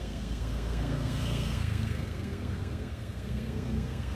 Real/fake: fake